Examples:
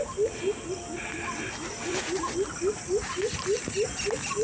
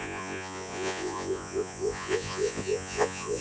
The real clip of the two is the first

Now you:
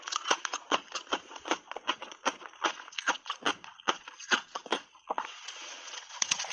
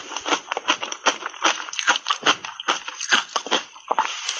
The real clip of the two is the second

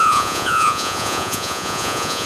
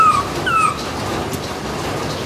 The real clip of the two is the second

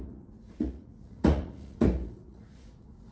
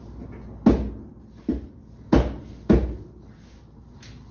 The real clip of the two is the second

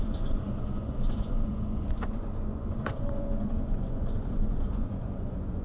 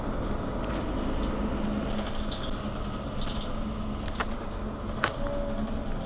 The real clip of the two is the second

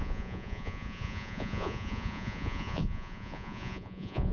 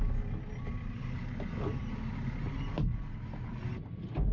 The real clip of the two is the second